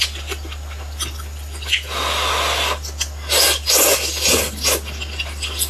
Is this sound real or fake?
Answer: real